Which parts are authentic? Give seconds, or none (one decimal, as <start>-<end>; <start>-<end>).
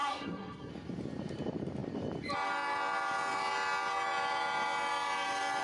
0.7-5.6